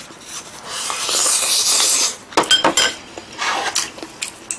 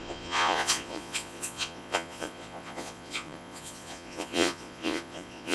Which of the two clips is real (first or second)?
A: first